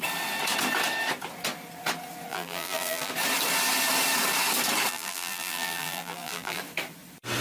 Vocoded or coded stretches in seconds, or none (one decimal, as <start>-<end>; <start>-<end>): 2.3-3.1; 4.9-6.6